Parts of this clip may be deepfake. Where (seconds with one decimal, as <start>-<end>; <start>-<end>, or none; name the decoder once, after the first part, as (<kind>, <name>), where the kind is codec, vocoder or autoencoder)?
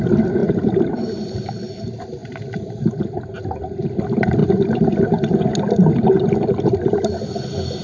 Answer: none